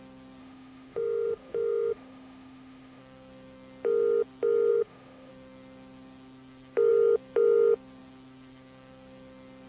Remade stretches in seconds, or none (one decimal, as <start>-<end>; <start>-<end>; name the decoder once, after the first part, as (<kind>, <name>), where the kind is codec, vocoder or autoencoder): 0.4-3.0 (autoencoder, DAC-VAE); 4.7-5.3